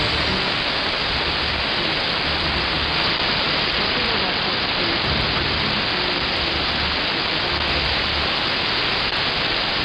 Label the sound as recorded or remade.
recorded